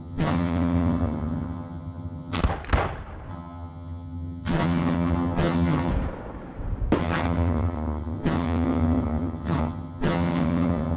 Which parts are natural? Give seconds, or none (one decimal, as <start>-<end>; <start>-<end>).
2.4-3.3; 5.9-7.0